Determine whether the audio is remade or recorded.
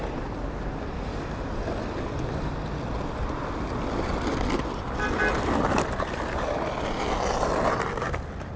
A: recorded